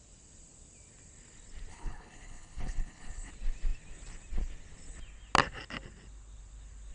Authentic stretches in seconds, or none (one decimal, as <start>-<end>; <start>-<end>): 0.0-1.7; 3.3-6.9